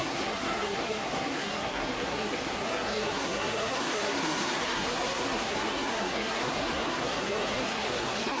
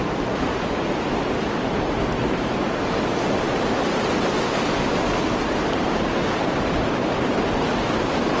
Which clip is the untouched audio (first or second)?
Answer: second